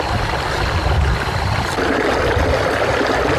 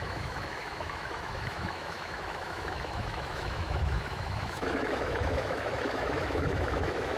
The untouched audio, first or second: first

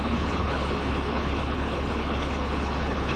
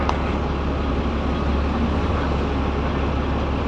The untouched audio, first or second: second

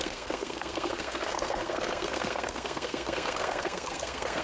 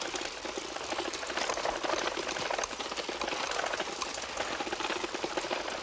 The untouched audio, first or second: second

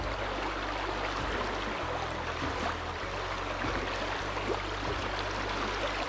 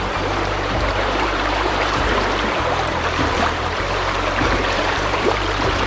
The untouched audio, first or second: first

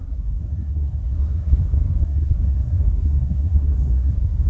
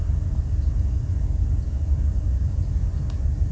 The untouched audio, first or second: second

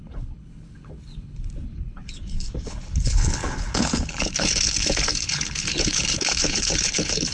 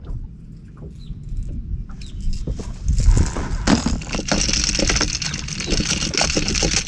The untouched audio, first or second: second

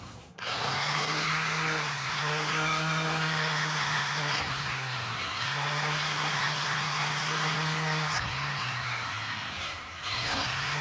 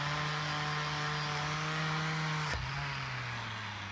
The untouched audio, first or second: second